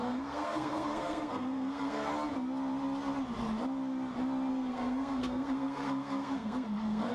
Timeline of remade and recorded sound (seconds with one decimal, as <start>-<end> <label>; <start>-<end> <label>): 0.0-2.1 remade; 2.1-4.5 recorded; 4.5-7.1 remade